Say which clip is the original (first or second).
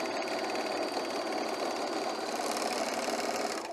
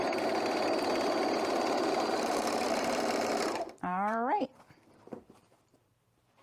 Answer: first